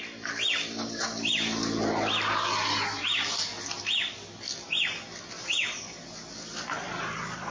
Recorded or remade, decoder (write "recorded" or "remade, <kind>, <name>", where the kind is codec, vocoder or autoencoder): recorded